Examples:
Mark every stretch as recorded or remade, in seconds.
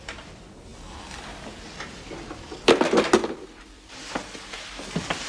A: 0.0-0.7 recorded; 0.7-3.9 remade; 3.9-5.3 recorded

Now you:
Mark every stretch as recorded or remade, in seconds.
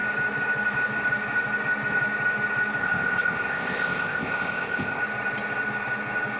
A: 0.0-2.8 recorded; 2.8-5.0 remade; 5.0-6.4 recorded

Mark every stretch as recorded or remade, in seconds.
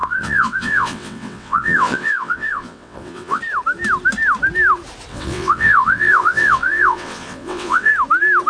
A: 0.0-3.4 remade; 3.4-5.1 recorded; 5.1-7.9 remade; 7.9-8.5 recorded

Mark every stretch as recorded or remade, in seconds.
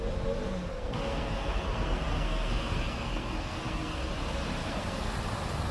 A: 0.0-0.7 recorded; 0.7-4.1 remade; 4.1-4.6 recorded; 4.6-5.1 remade; 5.1-5.7 recorded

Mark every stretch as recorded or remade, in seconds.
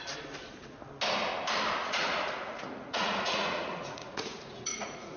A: 0.0-1.8 recorded; 1.8-5.2 remade